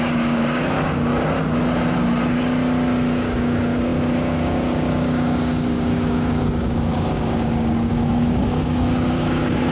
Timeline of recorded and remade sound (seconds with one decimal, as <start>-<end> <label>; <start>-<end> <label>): 0.0-1.1 remade; 1.1-3.2 recorded; 3.2-9.7 remade